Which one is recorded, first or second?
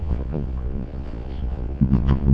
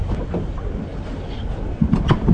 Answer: second